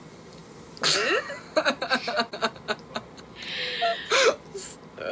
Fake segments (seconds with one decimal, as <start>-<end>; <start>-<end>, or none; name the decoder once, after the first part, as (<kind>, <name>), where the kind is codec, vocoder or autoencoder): none